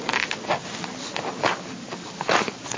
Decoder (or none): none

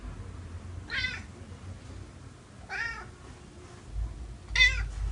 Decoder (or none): none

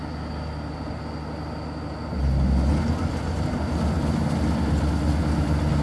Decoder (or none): none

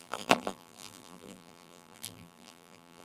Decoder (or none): vocoder, BigVGAN v2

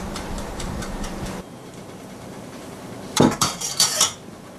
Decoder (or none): vocoder, BigVGAN v2